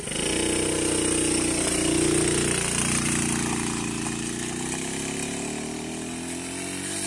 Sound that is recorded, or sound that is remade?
recorded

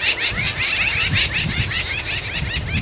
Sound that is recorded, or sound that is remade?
recorded